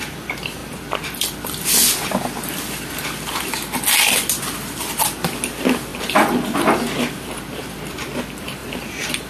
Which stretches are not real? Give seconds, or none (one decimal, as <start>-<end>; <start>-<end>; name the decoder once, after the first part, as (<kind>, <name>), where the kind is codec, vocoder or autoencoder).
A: none